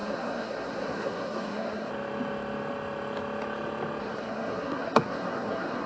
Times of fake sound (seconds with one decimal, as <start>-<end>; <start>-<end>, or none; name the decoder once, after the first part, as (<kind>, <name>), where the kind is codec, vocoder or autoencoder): 0.0-1.9 (codec, SNAC); 4.0-5.9